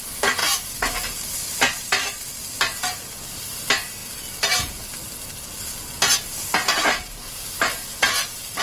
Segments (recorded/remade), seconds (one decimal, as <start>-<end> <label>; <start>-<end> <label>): 0.0-8.6 recorded